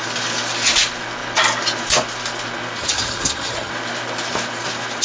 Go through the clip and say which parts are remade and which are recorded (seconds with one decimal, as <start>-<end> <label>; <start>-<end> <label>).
0.0-2.8 recorded; 2.8-3.7 remade; 3.7-5.0 recorded